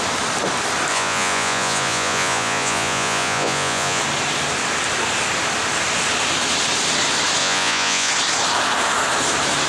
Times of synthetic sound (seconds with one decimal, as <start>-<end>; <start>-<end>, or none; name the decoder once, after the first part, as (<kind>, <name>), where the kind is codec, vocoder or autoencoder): 0.9-4.0 (vocoder, Vocos); 7.4-8.1